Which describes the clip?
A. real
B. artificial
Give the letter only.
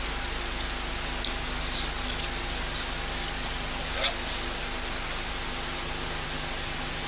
A